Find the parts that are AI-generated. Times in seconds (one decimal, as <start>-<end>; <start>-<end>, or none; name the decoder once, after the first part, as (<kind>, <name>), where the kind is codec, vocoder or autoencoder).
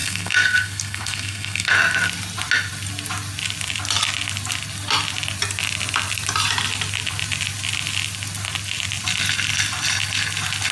0.0-1.7 (codec, SNAC)